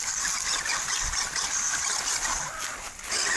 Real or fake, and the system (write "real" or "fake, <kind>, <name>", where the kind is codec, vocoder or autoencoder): real